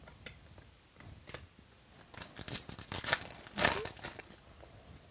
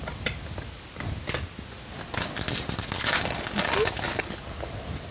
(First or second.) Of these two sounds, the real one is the second